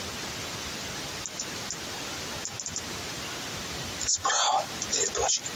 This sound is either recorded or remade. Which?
recorded